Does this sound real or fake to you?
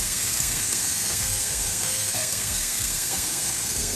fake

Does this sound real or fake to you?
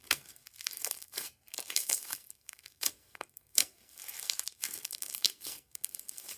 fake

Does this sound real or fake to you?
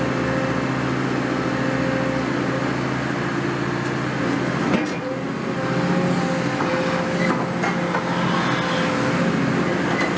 real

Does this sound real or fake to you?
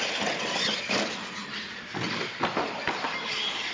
real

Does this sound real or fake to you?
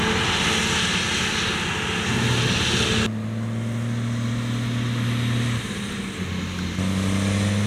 real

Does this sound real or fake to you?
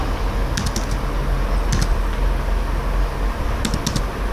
real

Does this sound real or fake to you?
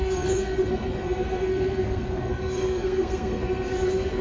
fake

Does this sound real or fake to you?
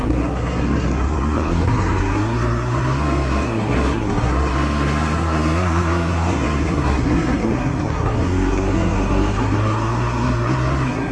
fake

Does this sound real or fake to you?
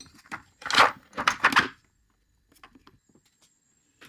real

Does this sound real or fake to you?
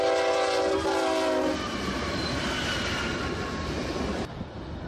real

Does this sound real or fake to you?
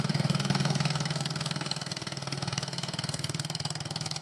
fake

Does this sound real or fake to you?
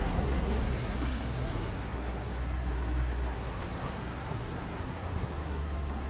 fake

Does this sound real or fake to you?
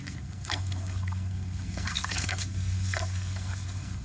fake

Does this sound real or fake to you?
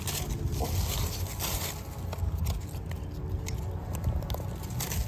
real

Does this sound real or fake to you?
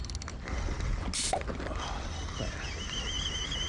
real